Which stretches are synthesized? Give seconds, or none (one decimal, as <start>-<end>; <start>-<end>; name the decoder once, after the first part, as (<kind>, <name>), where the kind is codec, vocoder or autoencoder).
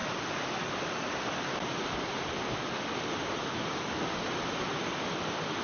none